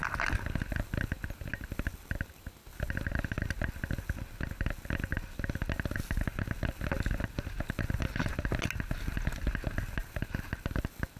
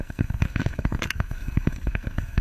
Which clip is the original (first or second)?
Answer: first